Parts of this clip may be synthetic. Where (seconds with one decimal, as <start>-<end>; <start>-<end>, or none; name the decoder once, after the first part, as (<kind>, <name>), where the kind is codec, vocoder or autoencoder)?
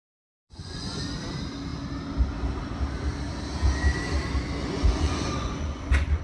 0.4-1.0 (vocoder, Vocos); 4.6-6.2